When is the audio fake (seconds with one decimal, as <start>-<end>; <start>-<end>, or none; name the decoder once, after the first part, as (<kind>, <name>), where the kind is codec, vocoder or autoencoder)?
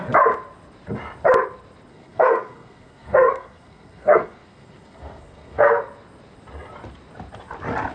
1.9-5.8 (codec, SNAC)